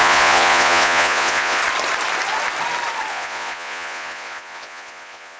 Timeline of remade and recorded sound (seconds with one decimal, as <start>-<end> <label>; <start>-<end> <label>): 0.0-1.6 remade; 1.6-3.1 recorded; 3.1-5.4 remade